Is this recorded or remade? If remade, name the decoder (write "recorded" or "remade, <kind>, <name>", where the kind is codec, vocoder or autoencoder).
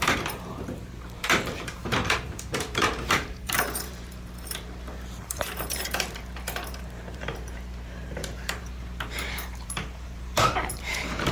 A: remade, vocoder, BigVGAN v2